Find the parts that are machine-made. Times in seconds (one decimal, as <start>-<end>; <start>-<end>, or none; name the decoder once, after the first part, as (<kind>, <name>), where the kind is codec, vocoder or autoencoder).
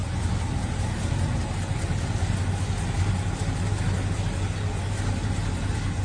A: none